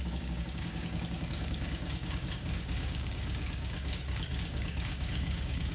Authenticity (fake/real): fake